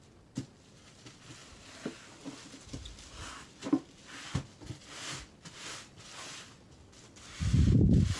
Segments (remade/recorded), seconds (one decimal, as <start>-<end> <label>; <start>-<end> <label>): 0.0-8.2 recorded